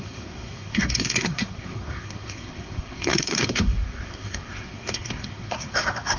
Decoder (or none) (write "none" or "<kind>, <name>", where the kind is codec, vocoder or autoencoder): codec, SNAC